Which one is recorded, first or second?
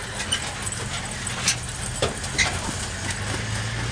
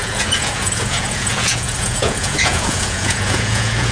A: first